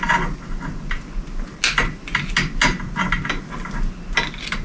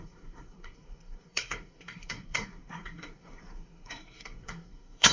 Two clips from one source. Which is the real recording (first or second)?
first